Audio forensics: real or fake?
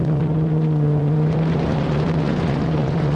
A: fake